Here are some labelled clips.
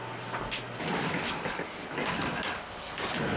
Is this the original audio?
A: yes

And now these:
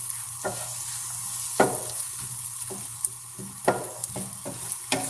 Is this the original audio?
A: yes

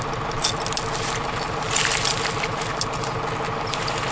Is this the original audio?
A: yes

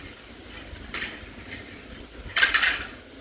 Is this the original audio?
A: yes